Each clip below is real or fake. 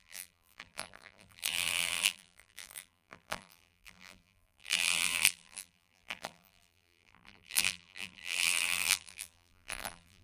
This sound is fake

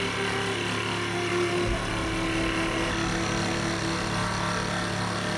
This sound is real